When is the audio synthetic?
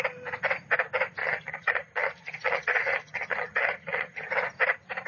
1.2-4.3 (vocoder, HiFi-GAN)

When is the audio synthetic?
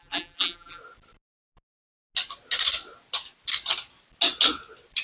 0.0-0.8 (vocoder, BigVGAN v2)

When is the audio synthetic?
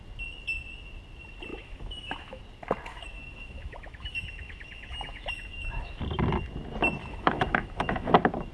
1.5-2.4 (autoencoder, DAC-VAE); 2.9-6.0; 7.0-8.1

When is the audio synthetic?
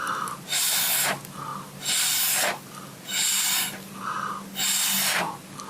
none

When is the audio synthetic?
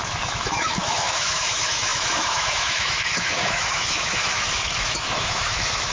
0.0-5.9 (autoencoder, DAC-VAE)